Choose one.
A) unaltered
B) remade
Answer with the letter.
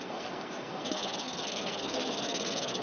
B